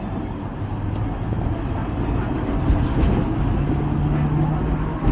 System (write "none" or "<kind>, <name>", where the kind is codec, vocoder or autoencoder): none